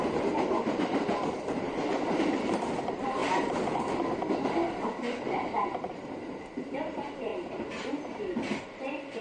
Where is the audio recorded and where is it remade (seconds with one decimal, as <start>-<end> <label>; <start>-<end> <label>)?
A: 0.0-3.2 remade; 3.2-5.7 recorded; 5.7-7.3 remade; 7.3-8.6 recorded; 8.6-9.2 remade